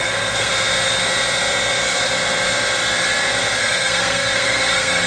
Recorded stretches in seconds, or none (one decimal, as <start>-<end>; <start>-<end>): 0.5-3.6